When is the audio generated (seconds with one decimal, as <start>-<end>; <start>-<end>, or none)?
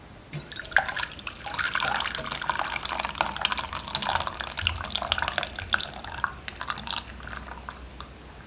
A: 6.5-7.1